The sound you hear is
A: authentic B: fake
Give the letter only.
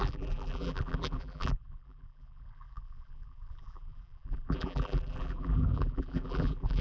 B